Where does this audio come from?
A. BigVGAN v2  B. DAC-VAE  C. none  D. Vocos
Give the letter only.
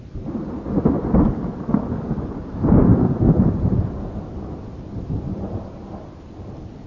A